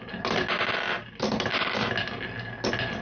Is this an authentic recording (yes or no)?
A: yes